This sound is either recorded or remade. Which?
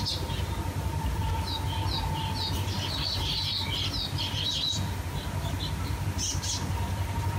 recorded